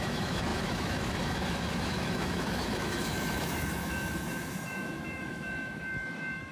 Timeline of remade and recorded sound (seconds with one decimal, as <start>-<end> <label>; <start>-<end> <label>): 0.0-6.5 remade